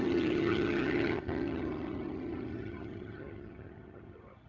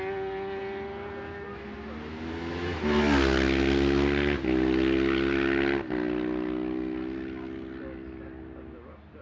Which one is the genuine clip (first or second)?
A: second